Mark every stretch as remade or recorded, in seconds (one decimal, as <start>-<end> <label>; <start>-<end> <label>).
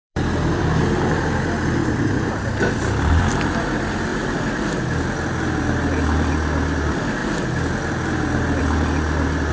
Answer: 0.0-7.2 remade; 7.2-8.6 recorded; 8.6-9.5 remade